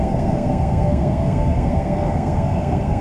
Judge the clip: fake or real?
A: fake